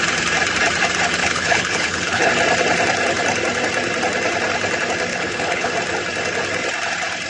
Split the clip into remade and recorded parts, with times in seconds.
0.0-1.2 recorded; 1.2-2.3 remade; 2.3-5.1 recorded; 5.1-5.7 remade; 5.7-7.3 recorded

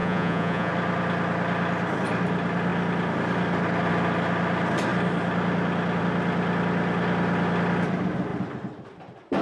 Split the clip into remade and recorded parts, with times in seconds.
0.0-0.7 remade; 0.7-9.4 recorded

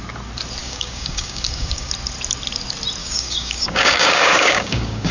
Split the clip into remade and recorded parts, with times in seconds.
0.0-0.6 recorded; 0.6-1.9 remade; 1.9-3.0 recorded; 3.0-5.1 remade

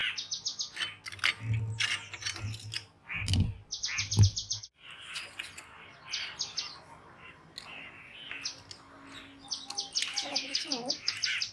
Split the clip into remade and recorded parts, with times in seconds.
0.0-10.3 recorded; 10.3-11.1 remade; 11.1-11.5 recorded

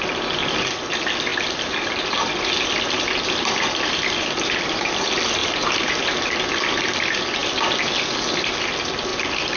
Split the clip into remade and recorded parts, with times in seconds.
0.0-5.4 recorded; 5.4-5.9 remade; 5.9-9.1 recorded; 9.1-9.6 remade

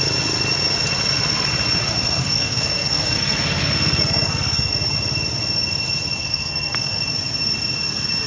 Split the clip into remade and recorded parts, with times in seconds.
0.0-2.2 recorded; 2.2-4.7 remade; 4.7-6.2 recorded; 6.2-7.0 remade; 7.0-8.3 recorded